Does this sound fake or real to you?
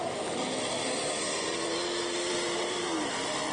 fake